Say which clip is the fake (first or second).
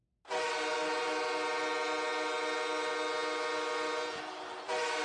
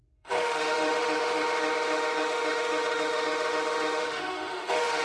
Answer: second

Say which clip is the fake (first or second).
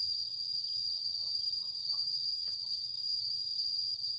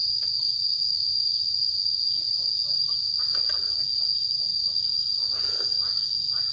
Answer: first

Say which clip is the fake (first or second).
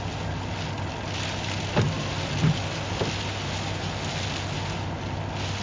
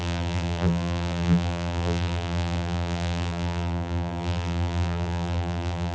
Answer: second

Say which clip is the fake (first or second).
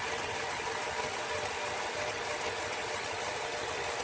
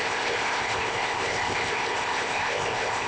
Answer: second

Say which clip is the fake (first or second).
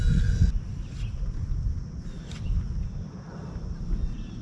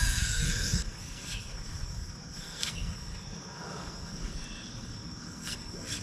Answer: second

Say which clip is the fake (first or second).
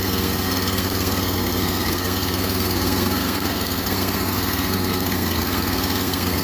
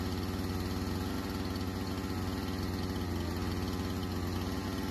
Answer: first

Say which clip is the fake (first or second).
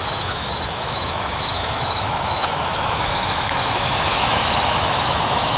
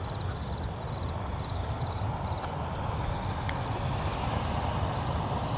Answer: first